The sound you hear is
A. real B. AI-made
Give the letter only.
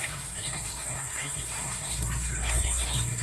B